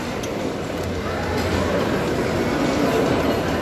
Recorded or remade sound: recorded